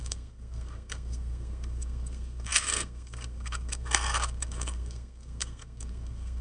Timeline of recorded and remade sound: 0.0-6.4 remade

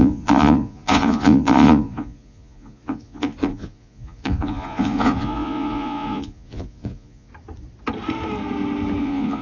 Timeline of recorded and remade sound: 0.0-7.3 remade; 7.3-9.0 recorded; 9.0-9.4 remade

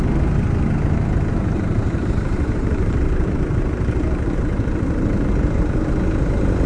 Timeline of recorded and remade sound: 0.0-1.3 recorded; 1.3-5.3 remade; 5.3-6.7 recorded

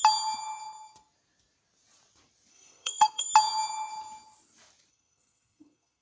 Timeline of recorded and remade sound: 0.0-2.5 recorded; 2.5-3.3 remade; 3.3-4.9 recorded; 4.9-6.0 remade

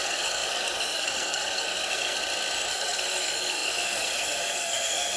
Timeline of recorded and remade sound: 0.0-2.2 remade; 2.2-2.7 recorded; 2.7-5.2 remade

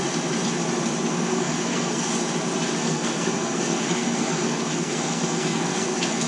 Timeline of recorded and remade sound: 0.0-1.1 recorded; 1.1-2.1 remade; 2.1-2.8 recorded; 2.8-6.3 remade

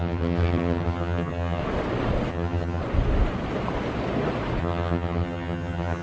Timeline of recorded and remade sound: 0.0-1.6 remade; 1.6-2.3 recorded; 2.3-2.8 remade; 2.8-4.6 recorded; 4.6-6.0 remade

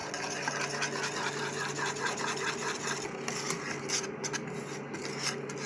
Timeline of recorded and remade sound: 0.0-5.7 recorded